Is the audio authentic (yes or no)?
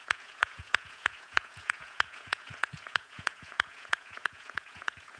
no